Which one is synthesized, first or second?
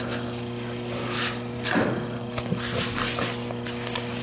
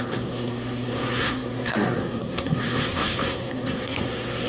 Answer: second